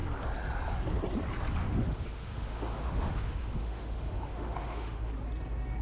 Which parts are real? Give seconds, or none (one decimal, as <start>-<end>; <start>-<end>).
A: 0.0-1.6; 5.1-5.8